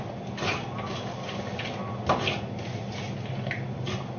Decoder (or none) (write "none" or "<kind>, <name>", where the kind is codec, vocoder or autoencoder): none